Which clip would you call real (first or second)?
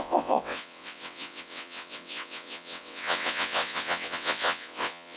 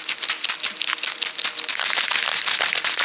second